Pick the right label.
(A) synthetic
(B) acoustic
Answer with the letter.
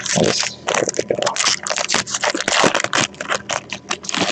B